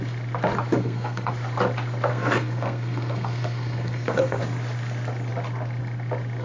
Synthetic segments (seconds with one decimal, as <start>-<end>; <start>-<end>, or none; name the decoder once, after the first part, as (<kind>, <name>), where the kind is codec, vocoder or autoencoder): 0.8-1.3 (codec, SNAC); 2.1-4.4